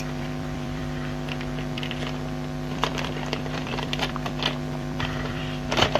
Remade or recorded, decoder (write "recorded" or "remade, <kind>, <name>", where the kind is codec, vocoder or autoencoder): remade, vocoder, BigVGAN v2